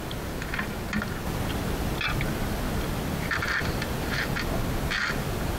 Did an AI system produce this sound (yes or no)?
no